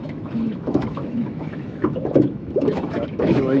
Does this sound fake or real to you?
fake